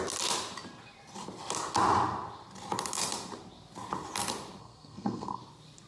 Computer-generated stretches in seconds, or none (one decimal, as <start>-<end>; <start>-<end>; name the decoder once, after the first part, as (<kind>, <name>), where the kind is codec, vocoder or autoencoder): 4.6-5.4 (codec, SNAC)